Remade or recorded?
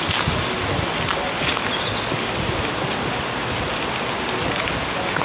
recorded